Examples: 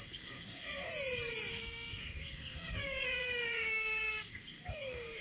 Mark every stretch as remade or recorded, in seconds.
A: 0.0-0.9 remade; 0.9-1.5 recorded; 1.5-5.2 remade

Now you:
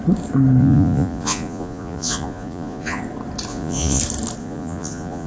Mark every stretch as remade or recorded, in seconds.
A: 0.0-0.6 recorded; 0.6-3.0 remade; 3.0-3.5 recorded; 3.5-4.0 remade; 4.0-4.4 recorded; 4.4-5.3 remade

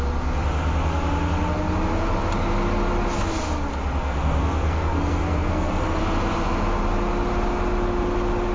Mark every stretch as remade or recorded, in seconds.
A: 0.0-4.0 recorded; 4.0-6.0 remade; 6.0-8.5 recorded

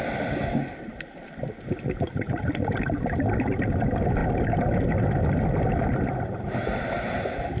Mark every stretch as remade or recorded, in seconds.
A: 0.0-7.6 recorded

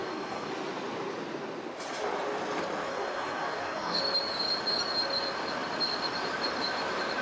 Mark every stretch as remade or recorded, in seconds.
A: 0.0-0.5 remade; 0.5-2.9 recorded; 2.9-4.0 remade; 4.0-7.2 recorded

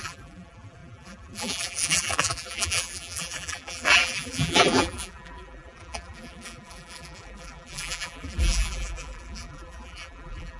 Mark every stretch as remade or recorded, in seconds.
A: 0.0-10.6 remade

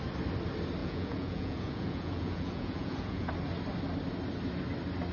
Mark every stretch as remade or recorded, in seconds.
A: 0.0-0.8 recorded; 0.8-3.3 remade; 3.3-5.1 recorded

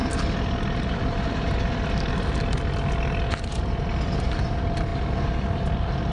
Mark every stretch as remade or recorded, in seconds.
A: 0.0-6.1 recorded